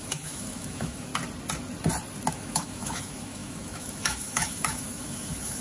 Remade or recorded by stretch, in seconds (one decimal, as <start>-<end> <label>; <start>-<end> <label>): 0.0-1.1 remade; 1.1-2.3 recorded; 2.3-5.6 remade